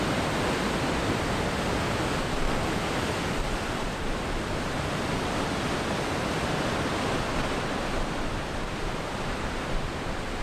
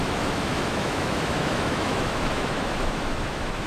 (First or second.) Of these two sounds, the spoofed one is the second